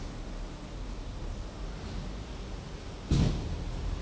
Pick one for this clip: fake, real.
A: real